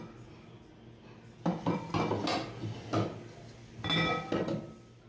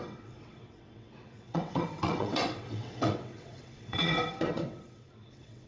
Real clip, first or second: first